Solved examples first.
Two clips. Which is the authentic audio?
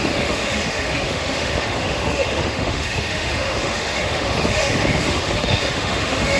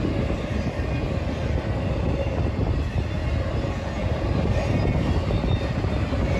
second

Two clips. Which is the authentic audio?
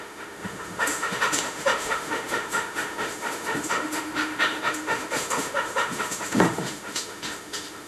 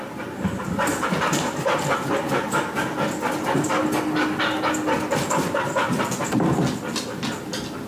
second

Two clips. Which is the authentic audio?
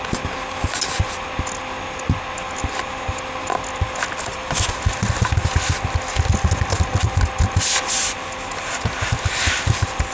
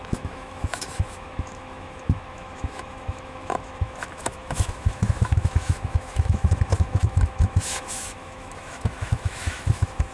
first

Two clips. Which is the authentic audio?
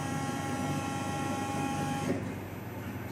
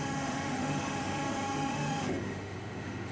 first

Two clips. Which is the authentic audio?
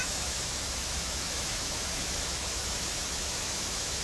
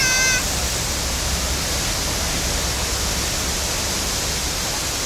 second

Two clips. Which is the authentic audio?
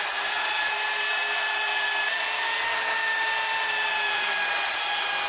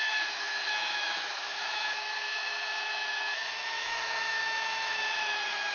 first